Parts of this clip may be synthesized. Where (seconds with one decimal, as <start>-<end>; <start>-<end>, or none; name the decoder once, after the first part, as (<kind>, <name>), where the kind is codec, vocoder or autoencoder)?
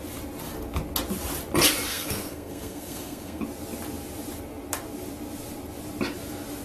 1.9-3.4 (codec, SNAC)